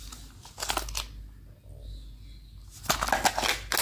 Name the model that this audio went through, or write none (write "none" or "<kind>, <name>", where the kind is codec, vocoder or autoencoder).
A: none